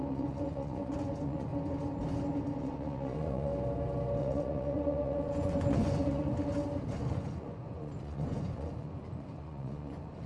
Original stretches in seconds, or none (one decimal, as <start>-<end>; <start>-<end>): 1.5-2.6; 3.5-4.2; 6.3-7.1